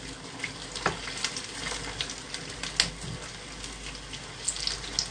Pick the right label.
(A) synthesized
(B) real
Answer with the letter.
B